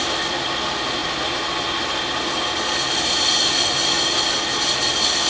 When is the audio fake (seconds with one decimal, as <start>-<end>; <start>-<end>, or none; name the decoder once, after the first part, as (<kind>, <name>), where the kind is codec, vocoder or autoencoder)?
none